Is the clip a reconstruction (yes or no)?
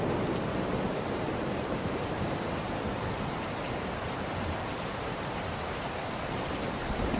yes